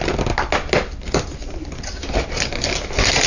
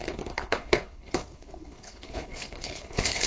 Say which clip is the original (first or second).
first